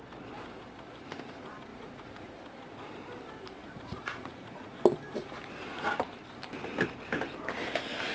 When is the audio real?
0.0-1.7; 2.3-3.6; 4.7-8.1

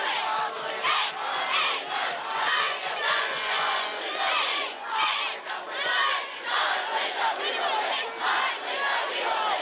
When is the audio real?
0.0-2.3; 4.1-4.5; 5.2-5.9; 7.2-9.6

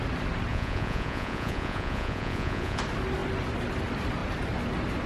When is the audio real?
0.0-0.5; 2.8-5.1